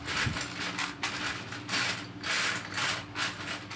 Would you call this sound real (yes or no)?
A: yes